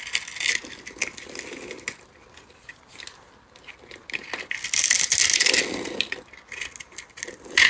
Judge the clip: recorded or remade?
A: recorded